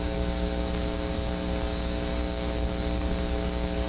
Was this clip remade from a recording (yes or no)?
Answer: yes